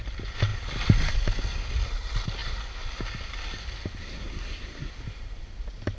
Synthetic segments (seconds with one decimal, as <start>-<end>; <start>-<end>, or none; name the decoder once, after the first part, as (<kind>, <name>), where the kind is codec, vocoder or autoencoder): 4.0-4.9 (codec, SNAC)